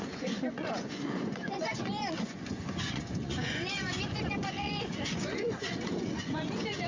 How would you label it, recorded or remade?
remade